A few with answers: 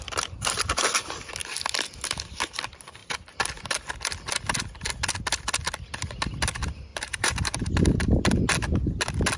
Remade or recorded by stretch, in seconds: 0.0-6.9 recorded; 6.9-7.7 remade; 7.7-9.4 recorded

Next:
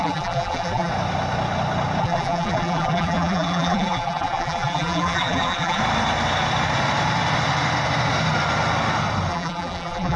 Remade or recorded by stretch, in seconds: 0.0-0.9 remade; 0.9-2.0 recorded; 2.0-5.8 remade; 5.8-9.3 recorded; 9.3-10.2 remade

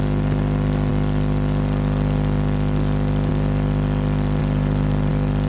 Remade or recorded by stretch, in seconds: 0.0-4.4 recorded; 4.4-5.1 remade; 5.1-5.5 recorded